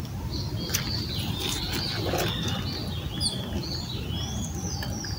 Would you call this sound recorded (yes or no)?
yes